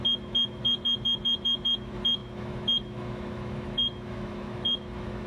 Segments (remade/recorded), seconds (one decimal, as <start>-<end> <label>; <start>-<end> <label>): 0.0-5.3 remade